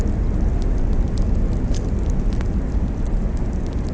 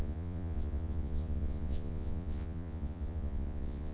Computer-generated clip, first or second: second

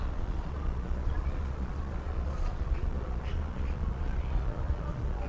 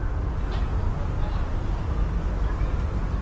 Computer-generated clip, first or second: first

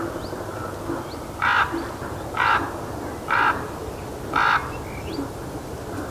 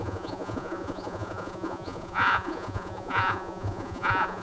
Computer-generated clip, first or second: second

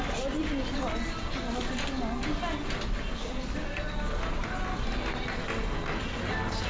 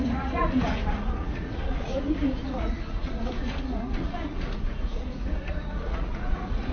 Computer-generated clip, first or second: second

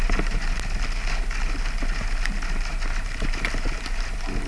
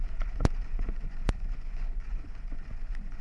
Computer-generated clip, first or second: second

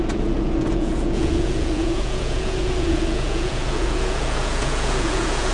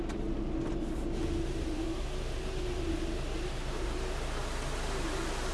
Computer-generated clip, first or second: first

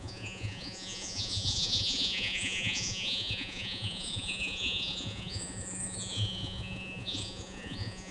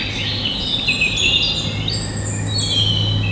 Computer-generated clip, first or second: first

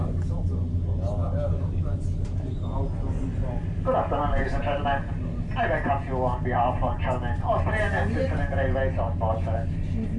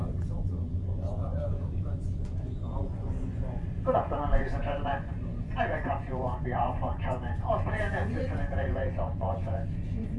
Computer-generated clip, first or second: second